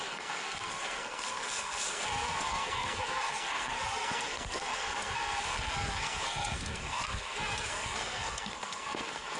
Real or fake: fake